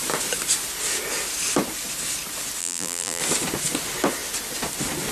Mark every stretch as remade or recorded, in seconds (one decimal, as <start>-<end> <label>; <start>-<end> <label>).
0.0-2.6 recorded; 2.6-3.2 remade; 3.2-5.1 recorded